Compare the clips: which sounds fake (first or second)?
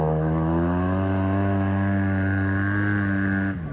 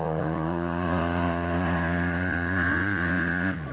second